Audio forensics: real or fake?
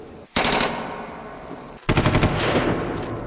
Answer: real